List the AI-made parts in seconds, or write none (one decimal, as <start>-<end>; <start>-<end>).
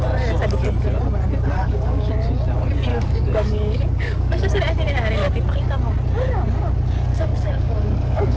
1.6-2.1; 2.9-4.6; 7.1-8.4